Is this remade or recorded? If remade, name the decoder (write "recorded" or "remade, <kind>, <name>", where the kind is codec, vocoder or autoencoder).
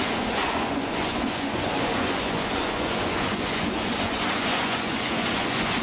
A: remade, vocoder, Vocos